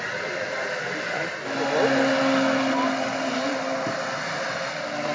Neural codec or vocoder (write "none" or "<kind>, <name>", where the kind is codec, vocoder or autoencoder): none